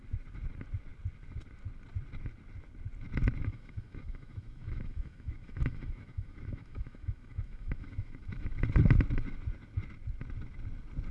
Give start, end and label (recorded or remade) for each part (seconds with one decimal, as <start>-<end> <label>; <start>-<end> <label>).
0.0-3.4 recorded; 3.4-8.5 remade; 8.5-11.1 recorded

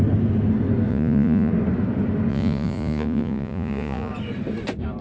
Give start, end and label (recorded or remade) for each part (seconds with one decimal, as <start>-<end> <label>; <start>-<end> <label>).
0.0-0.9 recorded; 0.9-1.5 remade; 1.5-2.3 recorded; 2.3-4.1 remade; 4.1-5.0 recorded